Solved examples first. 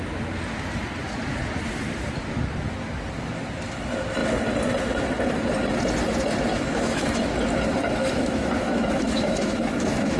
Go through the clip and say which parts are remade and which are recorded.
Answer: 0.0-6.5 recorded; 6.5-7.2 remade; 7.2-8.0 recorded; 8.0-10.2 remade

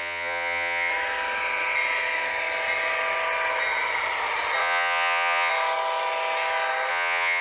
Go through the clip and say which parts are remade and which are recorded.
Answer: 0.0-0.9 remade; 0.9-4.6 recorded; 4.6-5.5 remade; 5.5-6.9 recorded; 6.9-7.4 remade

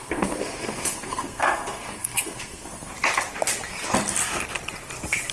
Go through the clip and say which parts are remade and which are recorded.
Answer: 0.0-2.9 remade; 2.9-5.3 recorded

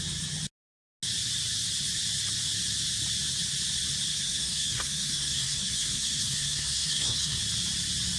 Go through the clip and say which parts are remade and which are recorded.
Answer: 0.0-4.1 recorded; 4.1-7.4 remade; 7.4-8.2 recorded

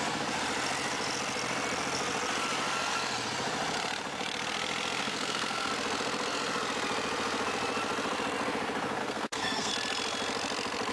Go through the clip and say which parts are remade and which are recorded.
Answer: 0.0-5.0 recorded; 5.0-5.7 remade; 5.7-9.0 recorded; 9.0-9.7 remade; 9.7-10.9 recorded